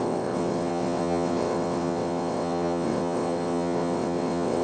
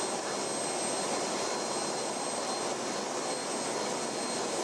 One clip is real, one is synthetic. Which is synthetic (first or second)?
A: first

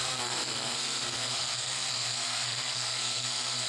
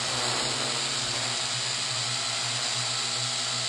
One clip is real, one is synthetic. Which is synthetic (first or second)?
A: first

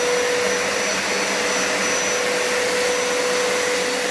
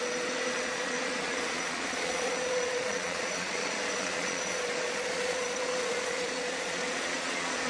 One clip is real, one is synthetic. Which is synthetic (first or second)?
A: second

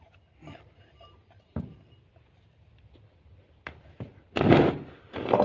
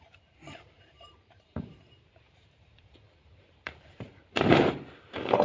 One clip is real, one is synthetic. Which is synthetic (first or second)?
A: second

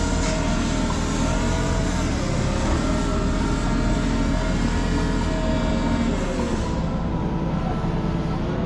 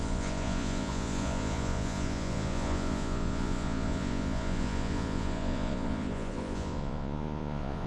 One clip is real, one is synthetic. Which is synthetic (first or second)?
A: second